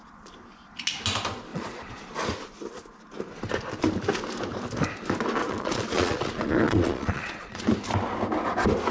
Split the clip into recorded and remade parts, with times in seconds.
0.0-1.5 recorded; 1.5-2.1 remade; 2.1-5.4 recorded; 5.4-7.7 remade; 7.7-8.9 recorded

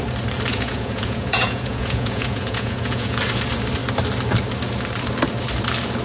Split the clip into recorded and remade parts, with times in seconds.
0.0-0.5 recorded; 0.5-3.2 remade; 3.2-6.0 recorded

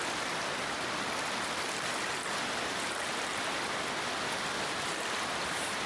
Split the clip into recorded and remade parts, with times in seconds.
0.0-5.9 recorded

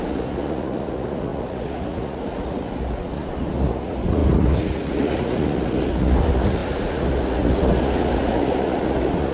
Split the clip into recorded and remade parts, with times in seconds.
0.0-9.3 remade

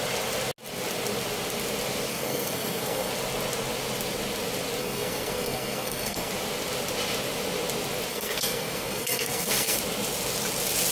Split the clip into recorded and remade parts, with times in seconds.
0.0-2.1 recorded; 2.1-3.1 remade; 3.1-4.8 recorded; 4.8-6.3 remade; 6.3-8.1 recorded; 8.1-9.8 remade; 9.8-10.9 recorded

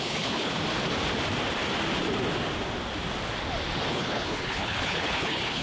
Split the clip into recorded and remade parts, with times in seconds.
0.0-0.5 remade; 0.5-3.9 recorded; 3.9-5.6 remade